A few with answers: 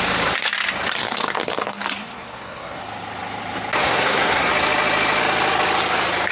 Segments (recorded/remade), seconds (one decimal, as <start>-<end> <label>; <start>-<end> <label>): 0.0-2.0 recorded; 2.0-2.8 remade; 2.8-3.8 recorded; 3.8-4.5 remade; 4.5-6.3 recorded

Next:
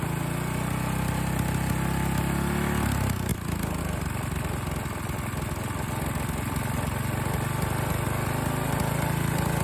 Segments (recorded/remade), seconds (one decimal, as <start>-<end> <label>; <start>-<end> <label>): 0.0-9.6 recorded

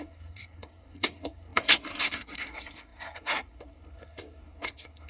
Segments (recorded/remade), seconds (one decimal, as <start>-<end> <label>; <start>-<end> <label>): 0.0-5.1 remade

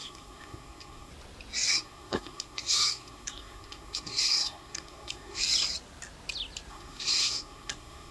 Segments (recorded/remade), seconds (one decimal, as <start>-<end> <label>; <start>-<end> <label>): 0.0-1.1 remade; 1.1-1.7 recorded; 1.7-5.4 remade; 5.4-6.7 recorded; 6.7-8.1 remade

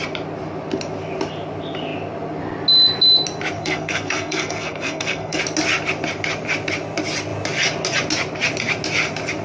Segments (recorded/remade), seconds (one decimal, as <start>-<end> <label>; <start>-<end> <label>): 0.0-3.6 recorded; 3.6-5.4 remade; 5.4-9.4 recorded